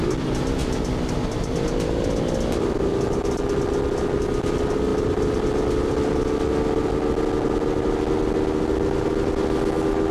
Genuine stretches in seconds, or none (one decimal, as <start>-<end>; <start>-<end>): 0.0-10.1